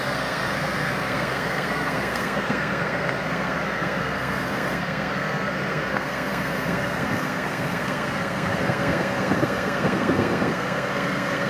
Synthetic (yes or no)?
yes